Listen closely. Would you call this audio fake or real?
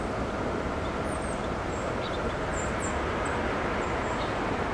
fake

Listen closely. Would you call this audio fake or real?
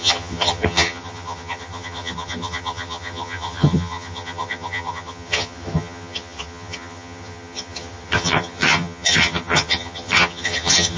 fake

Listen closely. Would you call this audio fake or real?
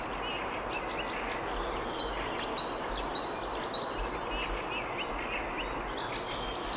real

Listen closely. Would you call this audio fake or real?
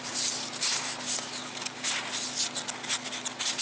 real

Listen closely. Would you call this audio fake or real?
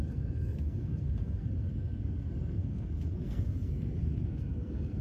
fake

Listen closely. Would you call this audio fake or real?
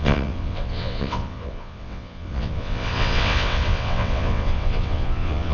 fake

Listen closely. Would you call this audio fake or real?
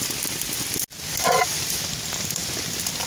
real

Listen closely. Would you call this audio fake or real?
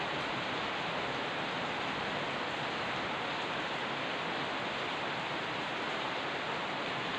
real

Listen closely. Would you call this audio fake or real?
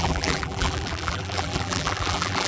fake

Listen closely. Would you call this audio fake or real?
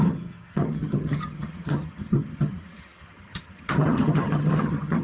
fake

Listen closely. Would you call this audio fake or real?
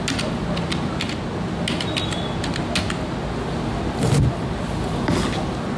real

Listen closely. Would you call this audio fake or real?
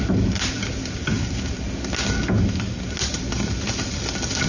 real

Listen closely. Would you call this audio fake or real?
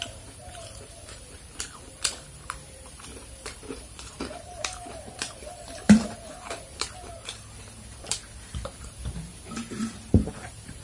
fake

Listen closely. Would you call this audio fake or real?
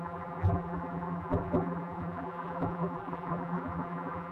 fake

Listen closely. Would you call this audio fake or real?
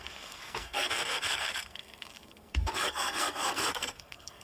fake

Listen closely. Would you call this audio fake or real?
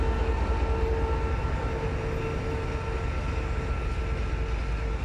real